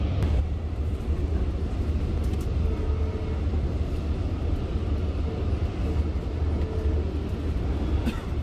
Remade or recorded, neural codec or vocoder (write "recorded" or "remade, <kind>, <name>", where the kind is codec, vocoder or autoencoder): recorded